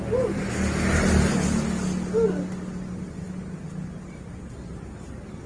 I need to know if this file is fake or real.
real